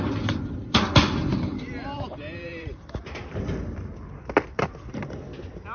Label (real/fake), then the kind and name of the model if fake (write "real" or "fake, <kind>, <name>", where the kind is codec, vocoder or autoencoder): fake, vocoder, BigVGAN v2